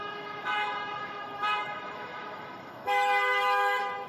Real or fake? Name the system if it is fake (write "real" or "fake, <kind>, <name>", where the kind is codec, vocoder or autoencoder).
fake, autoencoder, DAC-VAE